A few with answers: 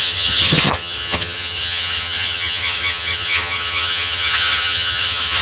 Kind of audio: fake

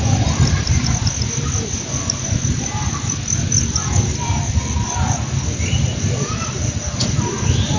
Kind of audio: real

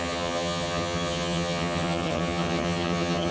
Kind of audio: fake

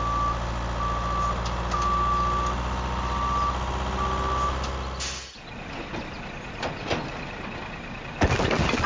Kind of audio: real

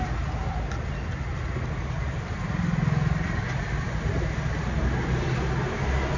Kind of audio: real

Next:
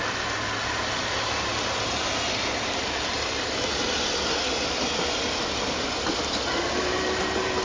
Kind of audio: real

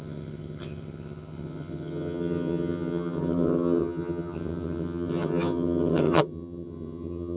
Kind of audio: fake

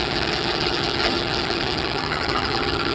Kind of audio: fake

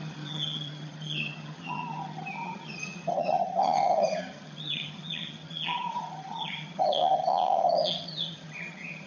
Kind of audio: fake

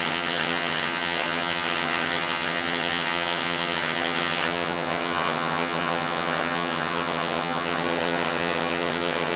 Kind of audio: fake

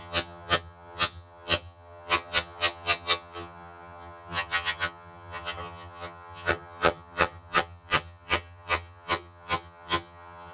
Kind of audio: fake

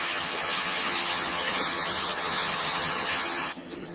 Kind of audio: fake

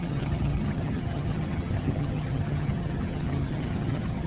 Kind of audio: fake